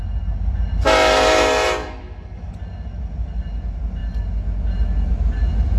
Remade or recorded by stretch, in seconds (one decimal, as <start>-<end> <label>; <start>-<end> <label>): 0.0-1.8 recorded; 1.8-2.5 remade; 2.5-5.8 recorded